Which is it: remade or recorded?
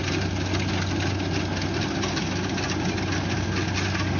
recorded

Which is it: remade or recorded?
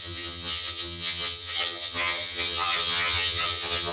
remade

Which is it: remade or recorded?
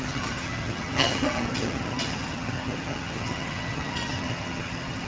remade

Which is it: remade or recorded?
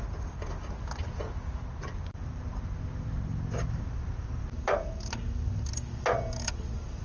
recorded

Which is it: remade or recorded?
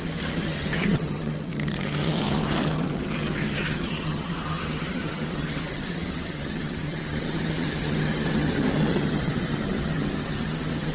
remade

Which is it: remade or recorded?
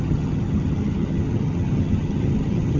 remade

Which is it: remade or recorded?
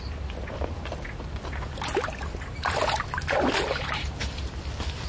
recorded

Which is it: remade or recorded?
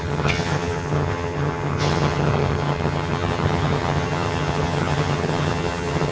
remade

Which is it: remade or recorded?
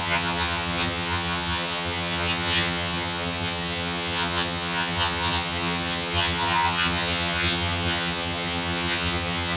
remade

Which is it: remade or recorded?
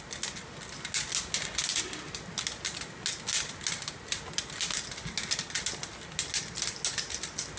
recorded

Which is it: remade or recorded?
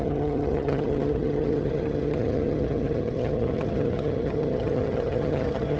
remade